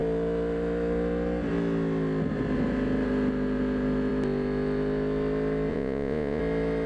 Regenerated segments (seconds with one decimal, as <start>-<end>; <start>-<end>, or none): 5.7-6.4